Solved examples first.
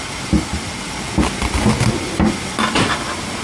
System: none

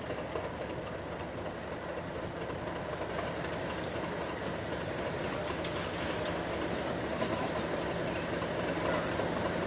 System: none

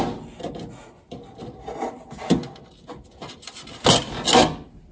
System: none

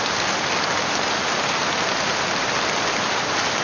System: none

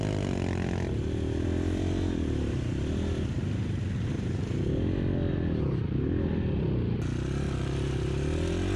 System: none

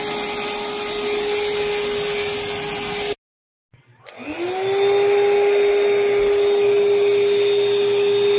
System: none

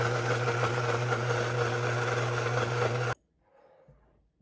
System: none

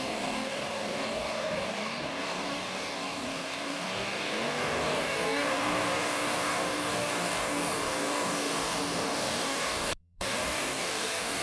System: codec, DAC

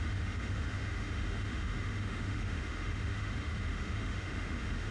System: autoencoder, DAC-VAE